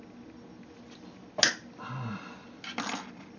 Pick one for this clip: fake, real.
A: real